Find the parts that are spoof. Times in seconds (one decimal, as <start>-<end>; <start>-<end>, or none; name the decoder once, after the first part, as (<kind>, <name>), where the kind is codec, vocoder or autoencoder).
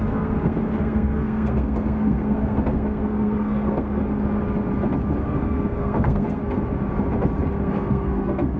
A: 0.0-4.0 (codec, SNAC); 5.2-6.4; 7.6-8.6